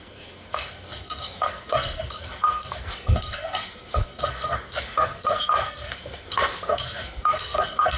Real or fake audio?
fake